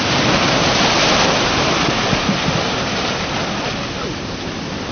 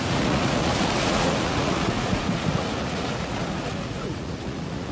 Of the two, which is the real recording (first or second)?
first